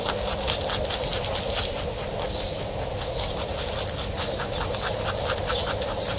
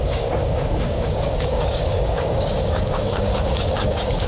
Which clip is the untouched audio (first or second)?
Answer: first